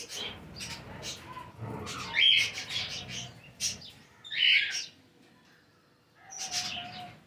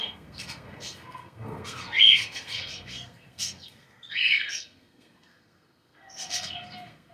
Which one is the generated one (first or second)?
second